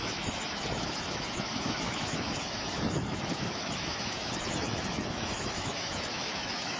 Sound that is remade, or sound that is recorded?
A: remade